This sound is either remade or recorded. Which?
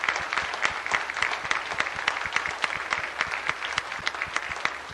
recorded